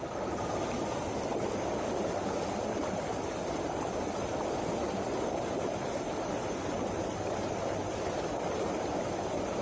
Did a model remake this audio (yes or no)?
no